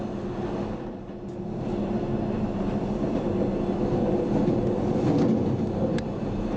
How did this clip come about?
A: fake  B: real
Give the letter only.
B